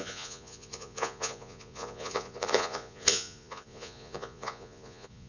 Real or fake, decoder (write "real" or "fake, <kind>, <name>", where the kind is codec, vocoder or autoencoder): fake, vocoder, Vocos